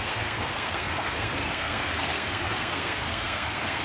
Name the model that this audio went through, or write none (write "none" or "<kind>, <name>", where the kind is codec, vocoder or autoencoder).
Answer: codec, SNAC